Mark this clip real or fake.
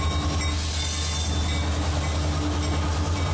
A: real